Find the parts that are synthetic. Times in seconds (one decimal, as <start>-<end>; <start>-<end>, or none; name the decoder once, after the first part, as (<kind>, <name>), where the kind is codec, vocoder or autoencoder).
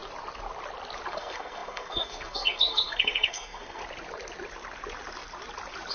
1.1-3.8 (codec, SNAC)